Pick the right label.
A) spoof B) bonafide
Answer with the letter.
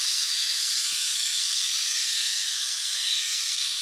A